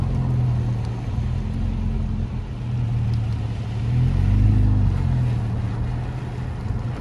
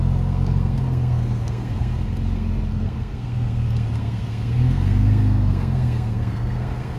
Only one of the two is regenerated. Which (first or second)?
second